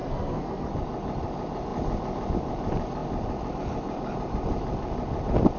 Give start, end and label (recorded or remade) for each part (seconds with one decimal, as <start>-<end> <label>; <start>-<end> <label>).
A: 0.0-0.7 remade; 0.7-5.6 recorded